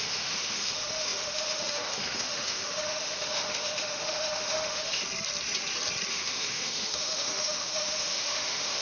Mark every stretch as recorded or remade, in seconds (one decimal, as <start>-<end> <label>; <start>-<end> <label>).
0.0-5.0 remade; 5.0-6.1 recorded; 6.1-8.8 remade